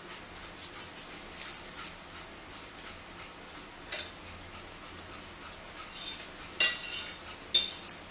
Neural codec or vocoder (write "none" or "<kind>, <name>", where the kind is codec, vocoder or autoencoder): none